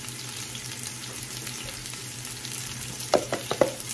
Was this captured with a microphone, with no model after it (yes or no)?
yes